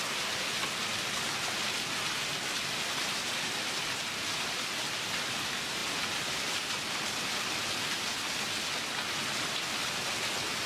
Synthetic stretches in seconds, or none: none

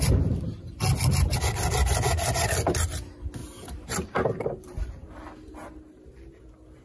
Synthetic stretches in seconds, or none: 3.4-6.1 (vocoder, BigVGAN v2)

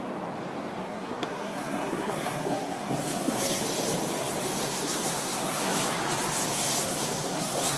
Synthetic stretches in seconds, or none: 0.8-3.6 (codec, SNAC); 4.6-6.0; 6.8-7.8

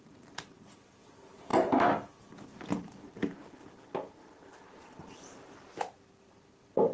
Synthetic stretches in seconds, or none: 0.0-5.7 (vocoder, BigVGAN v2); 6.5-6.9

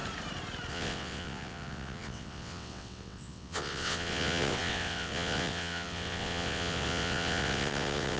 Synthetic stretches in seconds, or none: 0.7-8.2 (vocoder, WaveNeXt)